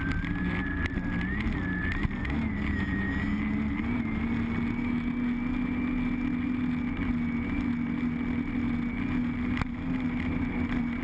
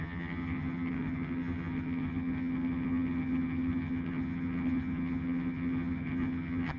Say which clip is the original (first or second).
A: first